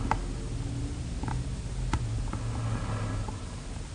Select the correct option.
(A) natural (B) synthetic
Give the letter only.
A